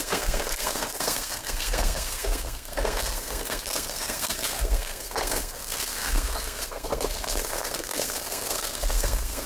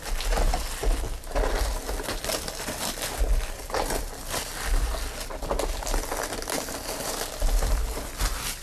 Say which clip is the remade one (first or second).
first